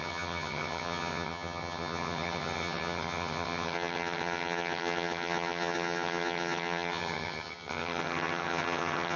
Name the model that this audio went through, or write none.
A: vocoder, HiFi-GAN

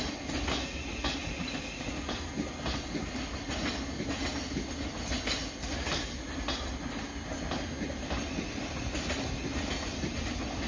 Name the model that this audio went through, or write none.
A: none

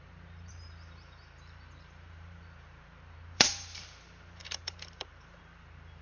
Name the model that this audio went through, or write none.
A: vocoder, BigVGAN v2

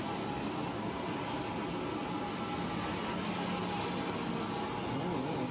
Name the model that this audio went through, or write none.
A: none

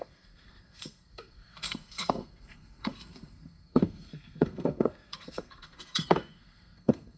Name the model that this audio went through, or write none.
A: codec, SNAC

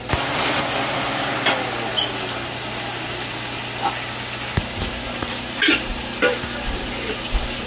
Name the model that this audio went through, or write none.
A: none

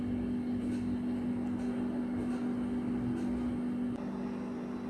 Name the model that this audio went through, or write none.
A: none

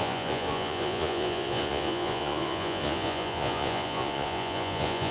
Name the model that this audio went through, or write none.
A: vocoder, Vocos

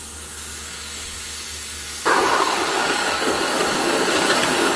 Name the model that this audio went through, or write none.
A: codec, DAC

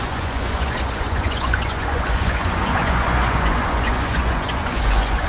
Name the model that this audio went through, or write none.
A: vocoder, Vocos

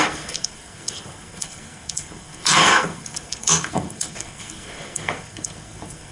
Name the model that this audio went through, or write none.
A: codec, SNAC